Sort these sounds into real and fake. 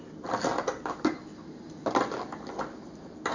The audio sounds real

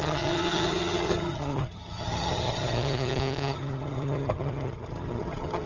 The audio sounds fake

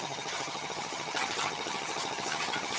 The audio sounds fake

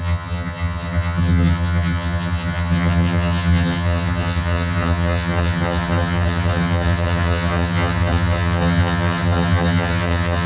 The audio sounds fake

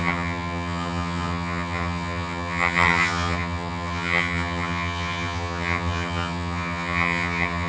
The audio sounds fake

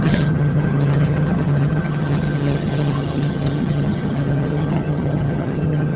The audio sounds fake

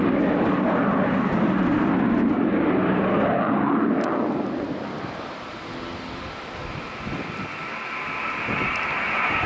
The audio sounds real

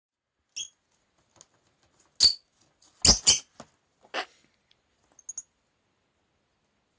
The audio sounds real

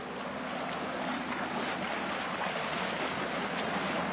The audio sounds real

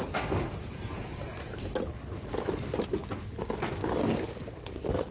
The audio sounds real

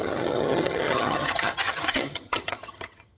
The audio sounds fake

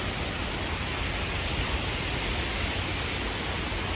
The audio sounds real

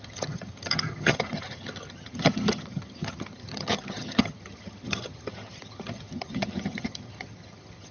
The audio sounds fake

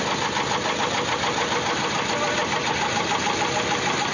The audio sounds real